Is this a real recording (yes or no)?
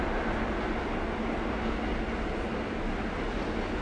yes